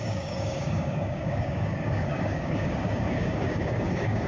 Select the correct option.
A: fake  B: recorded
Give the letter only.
A